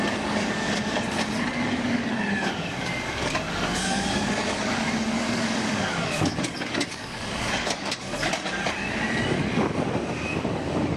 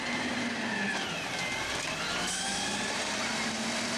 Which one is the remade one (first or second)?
first